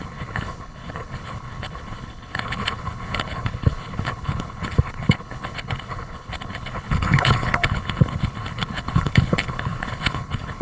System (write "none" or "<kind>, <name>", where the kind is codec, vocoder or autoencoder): codec, HILCodec